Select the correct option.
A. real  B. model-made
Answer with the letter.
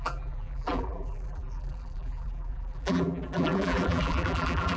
B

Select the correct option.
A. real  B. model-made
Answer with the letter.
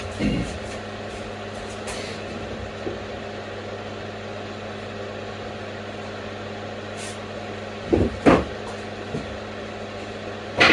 A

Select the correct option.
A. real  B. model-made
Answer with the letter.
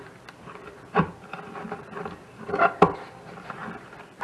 B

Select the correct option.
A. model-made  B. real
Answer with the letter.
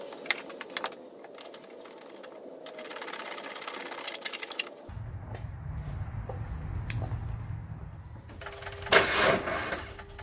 B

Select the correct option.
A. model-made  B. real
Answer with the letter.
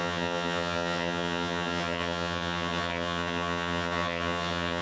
A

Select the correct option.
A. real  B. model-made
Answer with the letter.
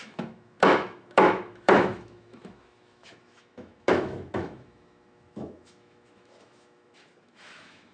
B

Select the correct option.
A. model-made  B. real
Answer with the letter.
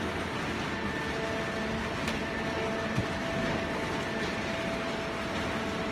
B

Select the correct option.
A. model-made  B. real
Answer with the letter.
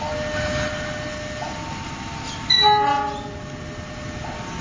B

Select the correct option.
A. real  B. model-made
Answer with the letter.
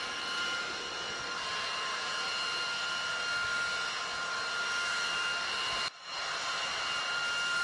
A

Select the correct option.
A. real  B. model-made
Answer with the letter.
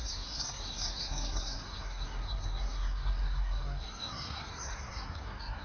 B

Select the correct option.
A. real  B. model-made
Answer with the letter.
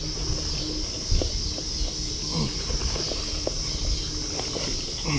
A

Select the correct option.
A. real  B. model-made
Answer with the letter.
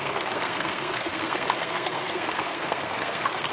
B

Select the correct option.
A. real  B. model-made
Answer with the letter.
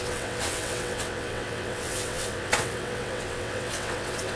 B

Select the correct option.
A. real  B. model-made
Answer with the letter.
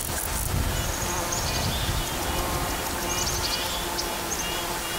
A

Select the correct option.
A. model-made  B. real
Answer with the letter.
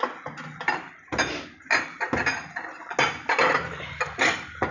B